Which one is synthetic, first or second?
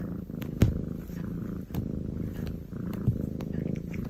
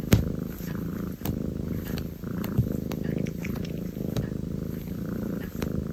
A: second